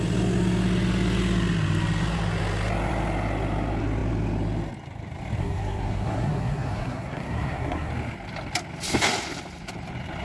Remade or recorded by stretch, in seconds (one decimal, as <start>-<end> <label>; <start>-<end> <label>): 0.0-5.4 recorded; 5.4-7.9 remade; 7.9-10.2 recorded